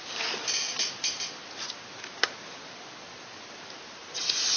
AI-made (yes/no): no